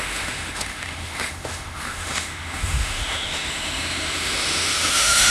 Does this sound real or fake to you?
fake